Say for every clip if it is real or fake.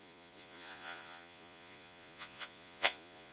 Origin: fake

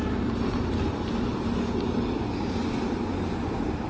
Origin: real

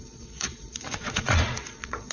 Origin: fake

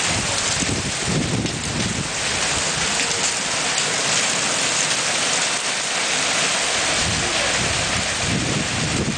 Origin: real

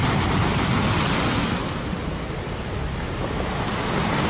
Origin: real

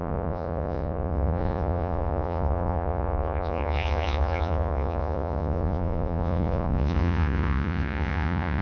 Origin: fake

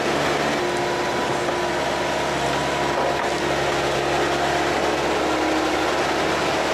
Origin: real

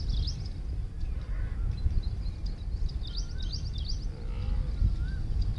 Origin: real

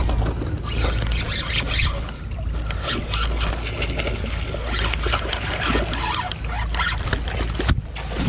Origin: real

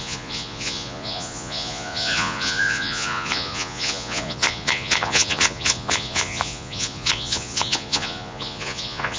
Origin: fake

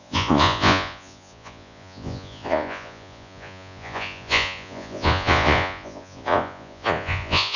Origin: fake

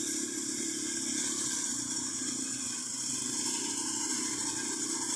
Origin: real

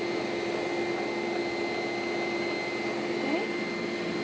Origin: real